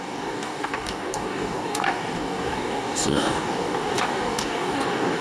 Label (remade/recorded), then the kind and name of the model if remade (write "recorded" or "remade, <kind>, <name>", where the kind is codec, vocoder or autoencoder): remade, codec, DAC